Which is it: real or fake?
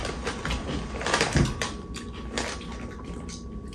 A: real